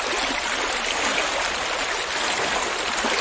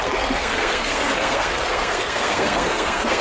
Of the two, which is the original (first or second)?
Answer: first